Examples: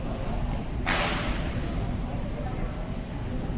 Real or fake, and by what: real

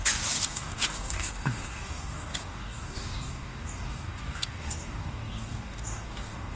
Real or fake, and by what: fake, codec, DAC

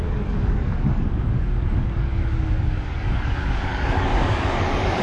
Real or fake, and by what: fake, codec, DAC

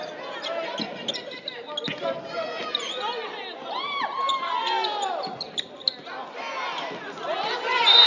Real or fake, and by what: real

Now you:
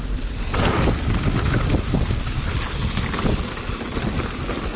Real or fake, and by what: real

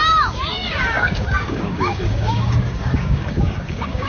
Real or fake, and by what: fake, codec, DAC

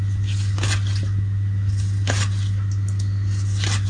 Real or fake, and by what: real